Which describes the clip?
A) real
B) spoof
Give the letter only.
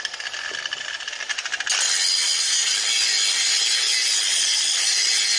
A